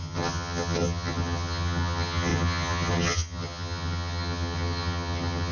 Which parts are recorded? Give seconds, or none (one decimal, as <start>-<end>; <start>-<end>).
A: none